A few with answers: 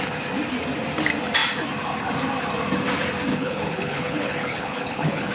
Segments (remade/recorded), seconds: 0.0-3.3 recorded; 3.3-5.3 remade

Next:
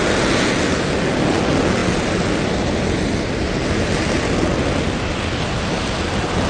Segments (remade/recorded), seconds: 0.0-6.5 recorded

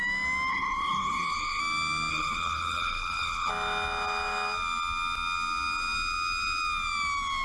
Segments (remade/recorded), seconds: 0.0-0.5 recorded; 0.5-1.6 remade; 1.6-2.1 recorded; 2.1-3.5 remade; 3.5-7.4 recorded

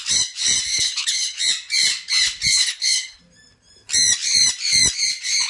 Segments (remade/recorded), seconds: 0.0-0.7 recorded; 0.7-1.4 remade; 1.4-2.5 recorded; 2.5-3.2 remade; 3.2-5.5 recorded

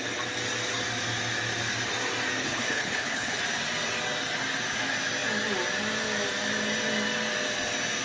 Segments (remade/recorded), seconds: 0.0-2.4 recorded; 2.4-3.4 remade; 3.4-8.0 recorded

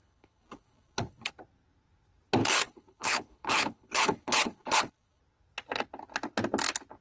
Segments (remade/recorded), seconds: 0.0-1.3 remade; 1.3-2.4 recorded; 2.4-5.2 remade; 5.2-7.0 recorded